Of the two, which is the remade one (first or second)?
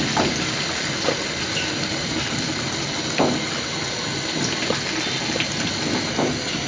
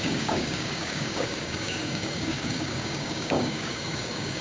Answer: second